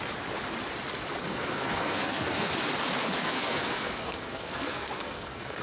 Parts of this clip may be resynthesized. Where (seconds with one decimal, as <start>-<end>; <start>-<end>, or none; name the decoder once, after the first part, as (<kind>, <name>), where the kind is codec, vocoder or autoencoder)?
1.2-2.5 (codec, SNAC); 3.0-5.6